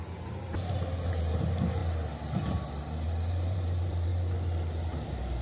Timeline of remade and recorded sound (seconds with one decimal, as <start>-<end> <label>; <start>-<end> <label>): 0.0-1.8 remade; 1.8-3.3 recorded; 3.3-4.1 remade; 4.1-4.8 recorded; 4.8-5.4 remade